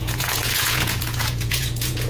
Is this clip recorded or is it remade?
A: remade